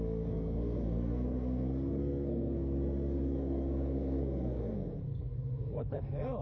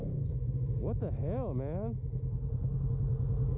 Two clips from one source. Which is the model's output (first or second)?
first